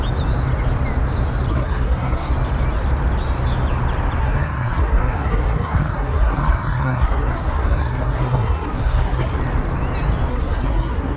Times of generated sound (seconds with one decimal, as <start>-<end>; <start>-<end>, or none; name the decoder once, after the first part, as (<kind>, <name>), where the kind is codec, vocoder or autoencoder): 1.5-2.3 (codec, SNAC); 4.2-9.4; 10.3-11.2